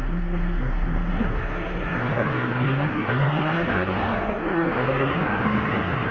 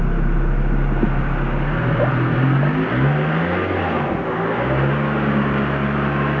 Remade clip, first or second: first